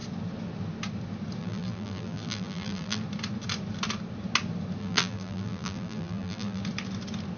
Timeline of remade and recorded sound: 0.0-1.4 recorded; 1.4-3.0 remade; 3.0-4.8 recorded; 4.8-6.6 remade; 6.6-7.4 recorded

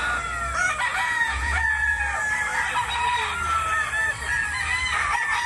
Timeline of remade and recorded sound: 0.0-0.9 recorded; 0.9-2.0 remade; 2.0-5.5 recorded

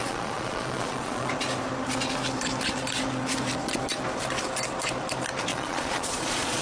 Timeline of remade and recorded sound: 0.0-1.3 remade; 1.3-5.5 recorded; 5.5-6.6 remade

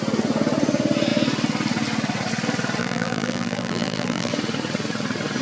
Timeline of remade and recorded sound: 0.0-2.8 recorded; 2.8-4.3 remade; 4.3-5.4 recorded

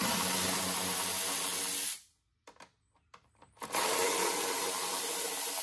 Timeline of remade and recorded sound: 0.0-1.5 remade; 1.5-3.2 recorded; 3.2-5.6 remade

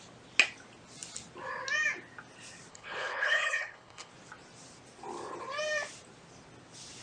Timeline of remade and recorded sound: 0.0-2.7 recorded; 2.7-4.1 remade; 4.1-7.0 recorded

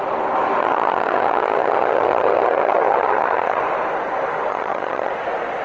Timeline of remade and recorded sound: 0.0-0.6 recorded; 0.6-3.6 remade; 3.6-4.5 recorded; 4.5-5.1 remade; 5.1-5.6 recorded